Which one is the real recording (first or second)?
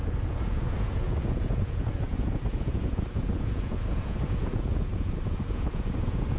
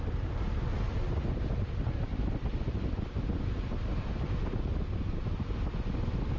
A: second